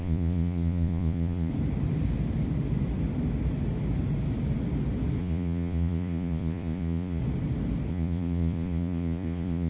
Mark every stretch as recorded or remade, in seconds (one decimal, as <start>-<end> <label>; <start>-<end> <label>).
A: 0.0-1.5 remade; 1.5-5.2 recorded; 5.2-7.2 remade; 7.2-7.9 recorded; 7.9-9.7 remade